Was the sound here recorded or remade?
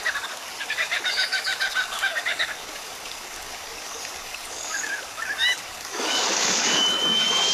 remade